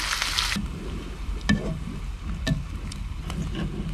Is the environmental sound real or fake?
real